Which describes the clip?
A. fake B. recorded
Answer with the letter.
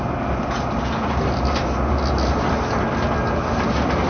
B